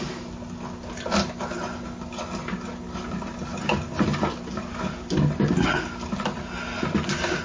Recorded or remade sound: recorded